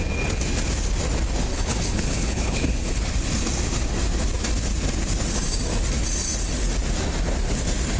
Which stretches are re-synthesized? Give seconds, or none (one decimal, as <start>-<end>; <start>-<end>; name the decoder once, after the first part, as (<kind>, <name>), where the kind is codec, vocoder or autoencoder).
1.5-3.1 (codec, HILCodec)